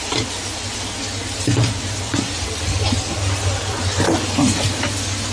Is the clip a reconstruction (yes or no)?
no